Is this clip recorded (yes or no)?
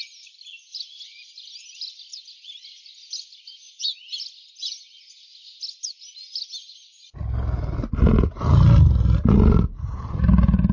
yes